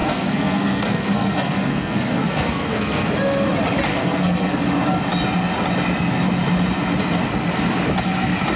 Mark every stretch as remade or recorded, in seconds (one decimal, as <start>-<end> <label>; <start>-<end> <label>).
0.0-3.1 remade; 3.1-3.9 recorded; 3.9-4.6 remade; 4.6-8.6 recorded